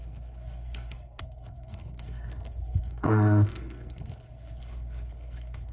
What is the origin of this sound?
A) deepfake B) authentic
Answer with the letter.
A